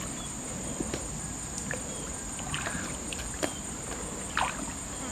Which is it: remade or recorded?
recorded